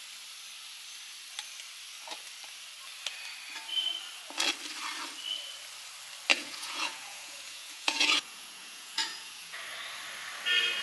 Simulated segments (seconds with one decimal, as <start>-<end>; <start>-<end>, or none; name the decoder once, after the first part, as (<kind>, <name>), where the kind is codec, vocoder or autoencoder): 6.3-9.6 (vocoder, Vocos)